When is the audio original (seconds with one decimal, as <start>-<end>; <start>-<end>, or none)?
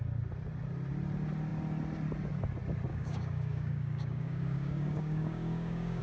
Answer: 0.0-2.9